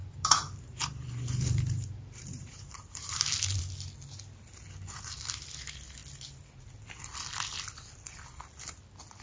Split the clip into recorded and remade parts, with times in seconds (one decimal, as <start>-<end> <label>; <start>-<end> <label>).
0.0-3.6 remade; 3.6-9.2 recorded